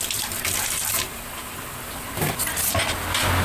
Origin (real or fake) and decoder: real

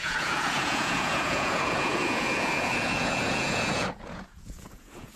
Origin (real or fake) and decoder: fake, vocoder, Vocos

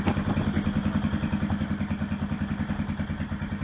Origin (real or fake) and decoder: real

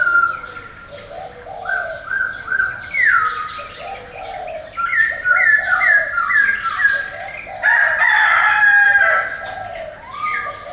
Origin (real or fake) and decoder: real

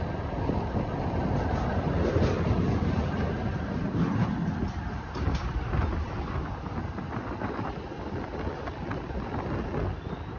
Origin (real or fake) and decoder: real